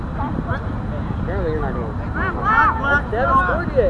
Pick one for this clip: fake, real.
real